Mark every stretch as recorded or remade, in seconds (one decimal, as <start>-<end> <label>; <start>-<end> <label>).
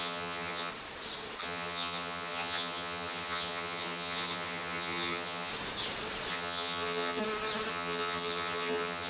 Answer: 0.0-0.7 remade; 0.7-1.4 recorded; 1.4-5.5 remade; 5.5-6.3 recorded; 6.3-7.2 remade; 7.2-7.7 recorded; 7.7-9.1 remade